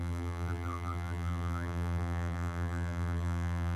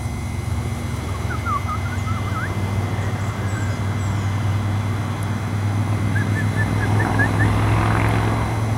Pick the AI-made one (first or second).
first